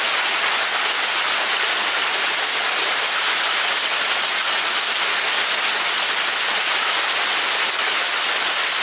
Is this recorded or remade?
recorded